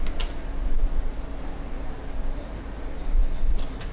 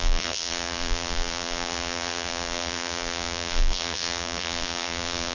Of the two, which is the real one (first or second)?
first